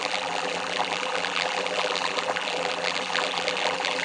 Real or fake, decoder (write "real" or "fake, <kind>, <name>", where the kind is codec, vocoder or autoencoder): fake, vocoder, BigVGAN v2